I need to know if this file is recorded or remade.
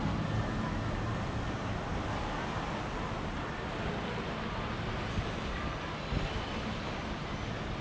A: recorded